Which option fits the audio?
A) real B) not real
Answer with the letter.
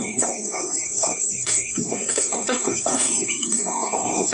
B